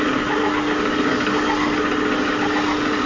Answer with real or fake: real